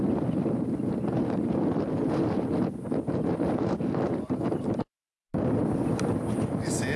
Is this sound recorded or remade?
recorded